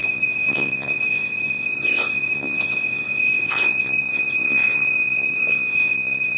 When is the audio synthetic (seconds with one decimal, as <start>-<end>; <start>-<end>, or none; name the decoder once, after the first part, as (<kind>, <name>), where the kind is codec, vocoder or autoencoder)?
0.0-6.4 (vocoder, WaveNeXt)

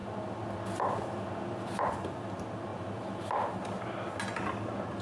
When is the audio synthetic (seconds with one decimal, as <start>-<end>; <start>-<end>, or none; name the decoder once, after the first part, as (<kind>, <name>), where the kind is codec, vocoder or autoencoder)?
2.7-3.9 (vocoder, BigVGAN v2)

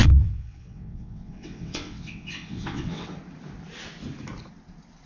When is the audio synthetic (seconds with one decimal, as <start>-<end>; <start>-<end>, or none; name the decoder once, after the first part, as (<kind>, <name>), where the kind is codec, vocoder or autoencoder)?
0.0-3.1 (vocoder, WaveNeXt)

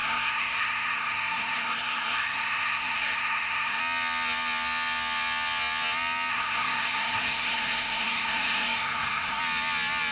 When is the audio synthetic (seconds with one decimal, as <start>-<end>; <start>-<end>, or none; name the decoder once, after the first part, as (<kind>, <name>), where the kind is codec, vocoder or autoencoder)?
0.0-3.8 (codec, SNAC); 6.3-9.4